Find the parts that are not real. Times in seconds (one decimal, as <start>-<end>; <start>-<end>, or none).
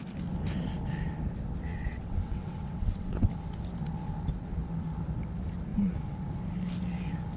1.7-3.3; 5.7-6.3